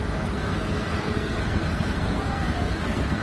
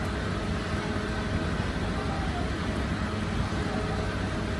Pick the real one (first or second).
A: second